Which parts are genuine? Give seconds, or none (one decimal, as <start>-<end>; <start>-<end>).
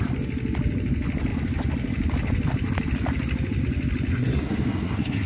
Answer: 0.0-4.1